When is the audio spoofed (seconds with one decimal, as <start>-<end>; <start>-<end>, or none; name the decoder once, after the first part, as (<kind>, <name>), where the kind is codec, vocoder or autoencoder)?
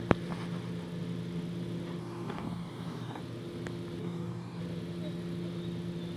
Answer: 2.0-3.2 (codec, DAC); 4.0-4.6